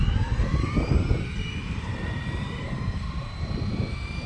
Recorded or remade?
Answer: remade